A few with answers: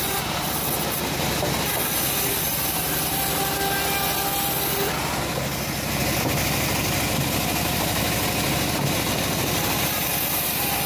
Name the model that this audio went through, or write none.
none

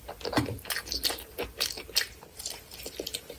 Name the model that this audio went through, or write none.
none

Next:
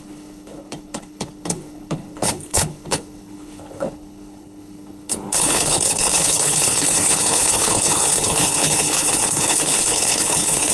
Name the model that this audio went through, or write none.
codec, HILCodec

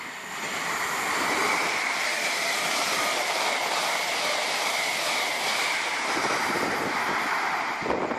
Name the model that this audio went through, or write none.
vocoder, BigVGAN v2